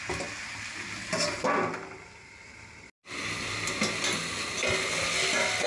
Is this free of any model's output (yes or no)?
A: yes